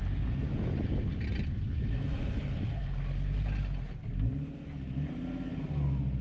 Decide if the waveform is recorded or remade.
recorded